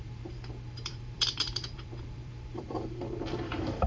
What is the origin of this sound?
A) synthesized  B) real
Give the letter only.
A